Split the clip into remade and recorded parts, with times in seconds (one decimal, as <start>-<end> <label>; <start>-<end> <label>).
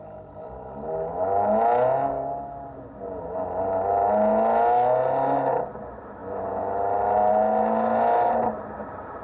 0.0-9.2 recorded